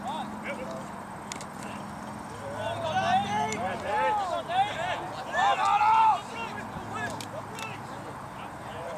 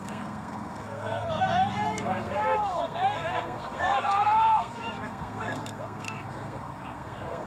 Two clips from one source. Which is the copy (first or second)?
second